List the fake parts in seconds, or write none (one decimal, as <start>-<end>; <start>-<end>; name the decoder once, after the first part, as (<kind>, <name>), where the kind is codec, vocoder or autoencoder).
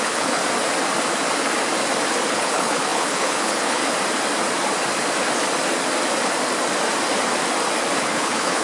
0.0-0.4 (codec, HILCodec); 2.3-3.8; 8.0-8.6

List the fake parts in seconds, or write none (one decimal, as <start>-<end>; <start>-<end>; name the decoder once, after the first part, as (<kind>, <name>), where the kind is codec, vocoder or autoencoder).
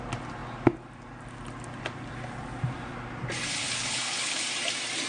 3.6-4.4 (codec, HILCodec)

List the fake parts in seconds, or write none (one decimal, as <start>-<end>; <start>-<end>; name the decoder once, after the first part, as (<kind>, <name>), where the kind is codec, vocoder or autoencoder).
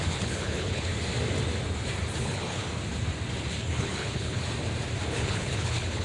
0.0-0.9 (codec, HILCodec); 2.2-2.6; 3.6-4.4; 5.1-6.0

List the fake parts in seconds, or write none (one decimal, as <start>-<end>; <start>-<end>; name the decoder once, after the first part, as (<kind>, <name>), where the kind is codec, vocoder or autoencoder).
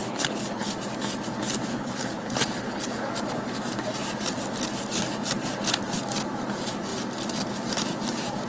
0.0-0.7 (codec, HILCodec); 1.7-3.0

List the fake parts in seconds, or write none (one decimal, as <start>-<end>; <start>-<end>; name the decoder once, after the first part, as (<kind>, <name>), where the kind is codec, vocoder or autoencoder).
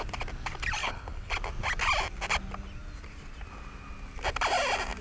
0.8-1.3 (codec, HILCodec)